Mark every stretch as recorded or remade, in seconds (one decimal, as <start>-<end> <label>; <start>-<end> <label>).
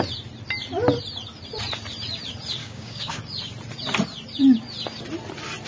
0.0-2.6 recorded; 2.6-3.2 remade; 3.2-5.7 recorded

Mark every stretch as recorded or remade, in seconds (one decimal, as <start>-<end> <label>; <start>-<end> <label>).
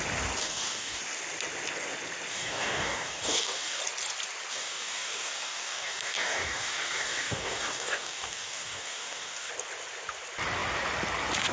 0.0-0.4 recorded; 0.4-1.0 remade; 1.0-2.3 recorded; 2.3-3.8 remade; 3.8-4.5 recorded; 4.5-9.5 remade; 9.5-11.5 recorded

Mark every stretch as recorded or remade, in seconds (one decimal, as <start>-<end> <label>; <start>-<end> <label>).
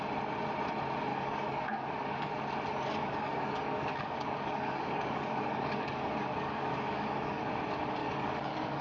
0.0-1.1 recorded; 1.1-2.3 remade; 2.3-2.7 recorded; 2.7-7.5 remade; 7.5-8.0 recorded; 8.0-8.8 remade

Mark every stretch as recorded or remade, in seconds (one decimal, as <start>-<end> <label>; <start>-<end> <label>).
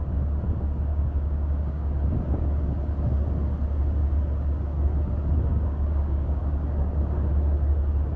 0.0-0.9 recorded; 0.9-1.9 remade; 1.9-5.5 recorded; 5.5-6.4 remade; 6.4-8.2 recorded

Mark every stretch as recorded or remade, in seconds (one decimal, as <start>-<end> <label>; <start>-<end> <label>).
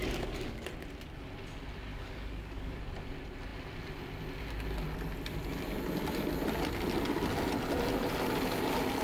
0.0-0.6 remade; 0.6-1.9 recorded; 1.9-2.8 remade; 2.8-9.0 recorded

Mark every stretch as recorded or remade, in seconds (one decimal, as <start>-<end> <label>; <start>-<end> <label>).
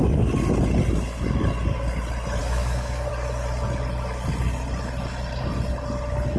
0.0-2.4 recorded; 2.4-3.1 remade; 3.1-6.4 recorded